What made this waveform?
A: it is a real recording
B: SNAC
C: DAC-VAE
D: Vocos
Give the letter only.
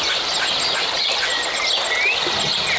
A